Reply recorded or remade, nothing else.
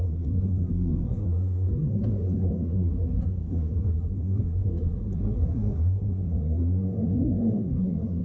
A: remade